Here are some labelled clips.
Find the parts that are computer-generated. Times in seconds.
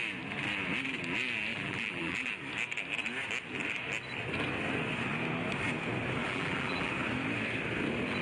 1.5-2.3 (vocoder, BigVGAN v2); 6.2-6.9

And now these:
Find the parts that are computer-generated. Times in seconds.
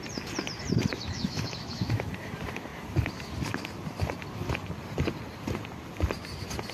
0.9-2.1 (autoencoder, DAC-VAE)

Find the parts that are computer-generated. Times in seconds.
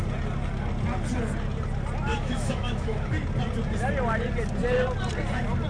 2.1-3.1 (autoencoder, DAC-VAE)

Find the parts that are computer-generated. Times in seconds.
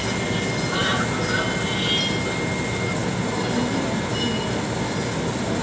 none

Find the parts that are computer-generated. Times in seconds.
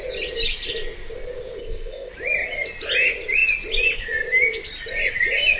1.6-2.1 (codec, ZipCodec)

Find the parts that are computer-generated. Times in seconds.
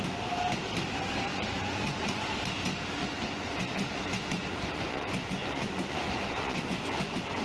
1.3-2.3 (vocoder, Vocos); 3.0-7.4